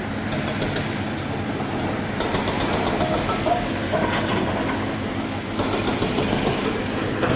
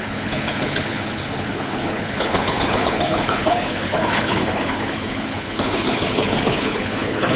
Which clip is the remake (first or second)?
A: second